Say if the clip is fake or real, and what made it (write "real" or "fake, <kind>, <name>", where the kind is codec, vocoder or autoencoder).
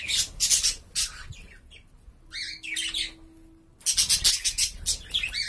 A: real